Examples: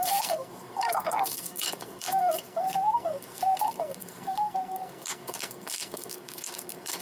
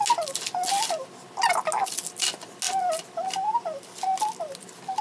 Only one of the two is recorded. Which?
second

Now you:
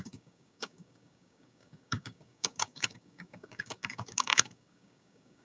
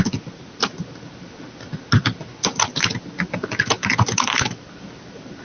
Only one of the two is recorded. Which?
second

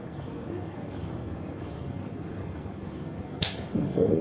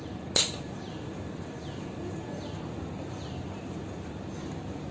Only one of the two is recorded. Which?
second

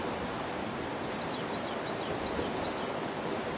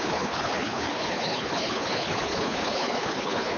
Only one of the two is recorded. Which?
first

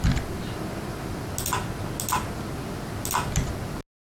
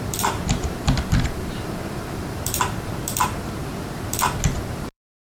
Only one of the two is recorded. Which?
first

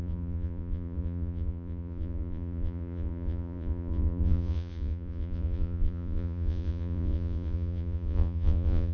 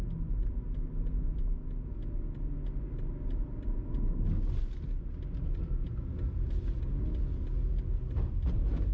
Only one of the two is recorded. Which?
second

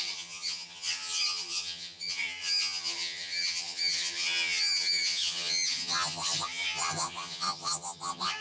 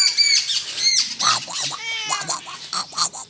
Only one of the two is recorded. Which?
second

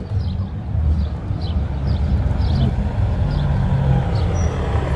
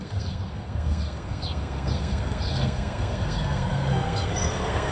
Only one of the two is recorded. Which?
first